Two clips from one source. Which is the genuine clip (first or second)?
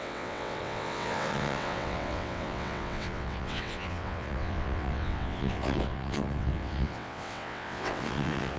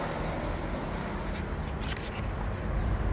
second